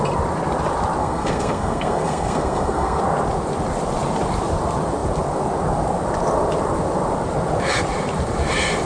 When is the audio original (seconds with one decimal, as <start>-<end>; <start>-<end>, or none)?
0.0-1.0; 3.0-8.9